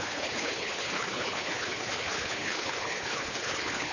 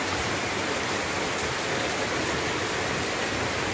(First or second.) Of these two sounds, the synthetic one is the first